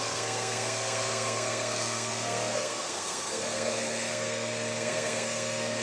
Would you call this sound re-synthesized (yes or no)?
yes